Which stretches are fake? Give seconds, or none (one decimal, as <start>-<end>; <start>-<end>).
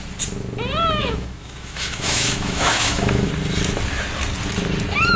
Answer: 1.0-3.3